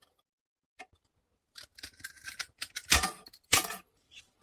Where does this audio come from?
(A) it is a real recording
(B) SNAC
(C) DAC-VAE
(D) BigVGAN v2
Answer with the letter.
D